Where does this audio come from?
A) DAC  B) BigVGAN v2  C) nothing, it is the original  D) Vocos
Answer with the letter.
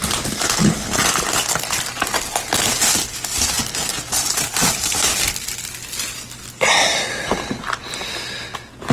C